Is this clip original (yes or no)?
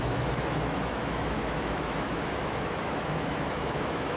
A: no